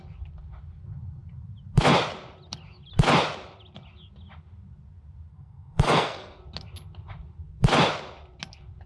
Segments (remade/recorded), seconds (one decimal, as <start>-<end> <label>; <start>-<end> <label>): 0.0-5.3 recorded; 5.3-6.4 remade; 6.4-8.9 recorded